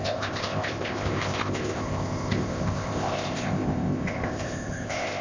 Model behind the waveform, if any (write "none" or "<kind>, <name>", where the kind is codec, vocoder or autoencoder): codec, ZipCodec